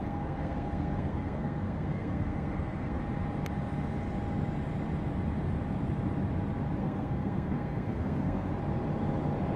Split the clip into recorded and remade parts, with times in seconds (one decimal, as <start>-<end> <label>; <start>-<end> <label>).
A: 0.0-3.0 remade; 3.0-6.8 recorded; 6.8-8.5 remade; 8.5-9.6 recorded